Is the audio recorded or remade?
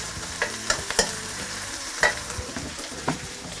remade